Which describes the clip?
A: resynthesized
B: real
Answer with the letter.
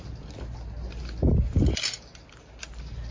B